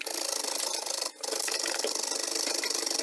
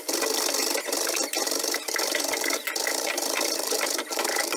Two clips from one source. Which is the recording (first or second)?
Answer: first